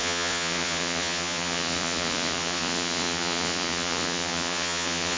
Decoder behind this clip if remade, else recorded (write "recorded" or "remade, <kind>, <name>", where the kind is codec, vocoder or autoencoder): remade, vocoder, Vocos